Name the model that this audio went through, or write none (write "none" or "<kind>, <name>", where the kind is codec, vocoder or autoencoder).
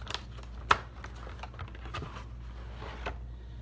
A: none